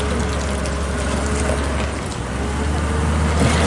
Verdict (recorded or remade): recorded